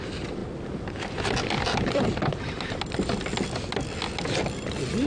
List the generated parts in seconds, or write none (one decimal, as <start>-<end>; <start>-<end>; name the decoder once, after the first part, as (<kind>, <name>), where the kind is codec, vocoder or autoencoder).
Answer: none

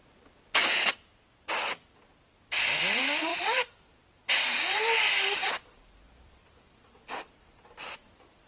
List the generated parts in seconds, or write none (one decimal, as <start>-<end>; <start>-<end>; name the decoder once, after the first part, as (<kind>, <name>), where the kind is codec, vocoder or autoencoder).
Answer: 2.1-8.5 (vocoder, BigVGAN v2)

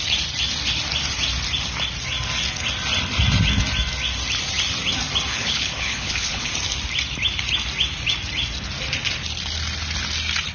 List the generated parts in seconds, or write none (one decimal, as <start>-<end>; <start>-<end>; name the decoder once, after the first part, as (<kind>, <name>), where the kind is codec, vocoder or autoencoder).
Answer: 5.3-6.5 (codec, HILCodec)